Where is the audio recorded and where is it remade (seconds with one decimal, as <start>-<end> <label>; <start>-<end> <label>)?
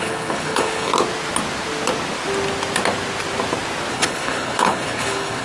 0.0-0.9 remade; 0.9-3.9 recorded; 3.9-5.4 remade